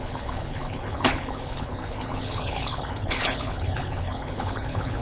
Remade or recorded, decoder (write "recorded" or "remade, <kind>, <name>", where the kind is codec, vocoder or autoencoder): remade, codec, HILCodec